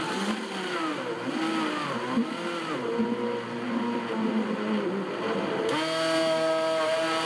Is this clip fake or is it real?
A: real